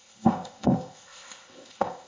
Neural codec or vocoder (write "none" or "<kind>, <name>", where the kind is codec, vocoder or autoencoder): codec, ZipCodec